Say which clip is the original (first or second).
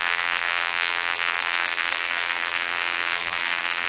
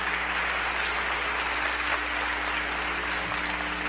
second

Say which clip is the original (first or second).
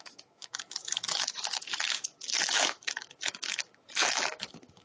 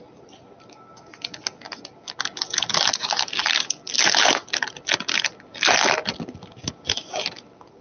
second